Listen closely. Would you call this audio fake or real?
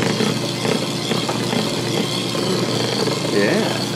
real